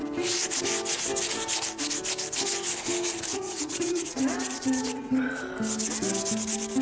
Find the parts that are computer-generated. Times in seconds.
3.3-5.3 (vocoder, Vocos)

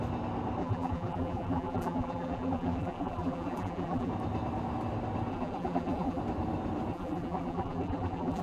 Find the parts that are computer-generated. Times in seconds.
0.6-4.1 (vocoder, BigVGAN v2); 5.3-6.2; 6.9-8.4

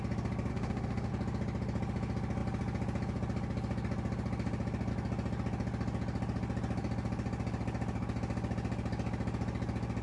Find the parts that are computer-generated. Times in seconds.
0.5-1.1 (autoencoder, DAC-VAE)

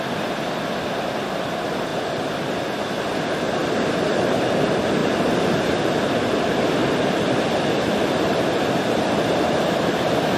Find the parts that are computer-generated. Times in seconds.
1.9-3.0 (vocoder, BigVGAN v2); 3.6-4.5; 5.0-5.5; 6.8-10.4